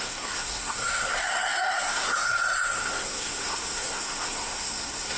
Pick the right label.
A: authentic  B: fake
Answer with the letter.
B